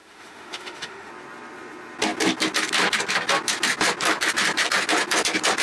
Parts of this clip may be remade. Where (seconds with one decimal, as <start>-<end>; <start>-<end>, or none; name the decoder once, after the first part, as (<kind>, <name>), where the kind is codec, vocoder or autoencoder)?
0.0-1.1 (autoencoder, DAC-VAE)